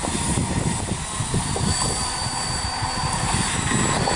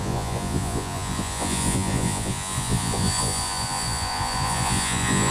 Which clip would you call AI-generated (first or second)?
second